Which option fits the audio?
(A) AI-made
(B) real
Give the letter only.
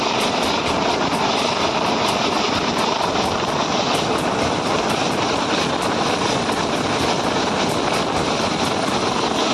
B